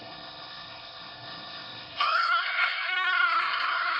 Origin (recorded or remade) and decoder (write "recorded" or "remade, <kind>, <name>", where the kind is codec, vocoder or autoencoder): remade, codec, SNAC